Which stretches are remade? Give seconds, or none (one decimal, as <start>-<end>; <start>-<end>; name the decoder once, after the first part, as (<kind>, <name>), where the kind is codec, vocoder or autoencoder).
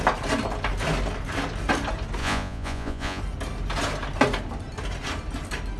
2.2-3.2 (vocoder, Vocos)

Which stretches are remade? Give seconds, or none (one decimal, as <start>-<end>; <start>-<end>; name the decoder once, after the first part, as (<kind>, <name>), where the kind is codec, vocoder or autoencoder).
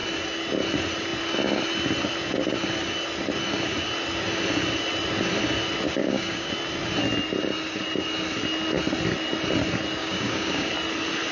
6.0-6.5 (codec, DAC); 10.0-10.7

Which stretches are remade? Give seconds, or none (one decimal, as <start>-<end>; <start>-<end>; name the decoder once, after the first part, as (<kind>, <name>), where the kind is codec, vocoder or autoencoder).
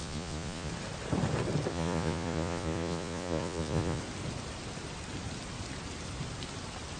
0.0-0.7 (vocoder, Vocos); 1.7-4.0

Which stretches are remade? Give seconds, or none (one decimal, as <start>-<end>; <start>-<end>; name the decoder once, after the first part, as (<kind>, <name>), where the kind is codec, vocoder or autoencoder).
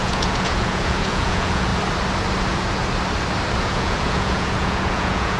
0.0-1.7 (vocoder, Vocos); 2.4-2.8; 3.6-5.4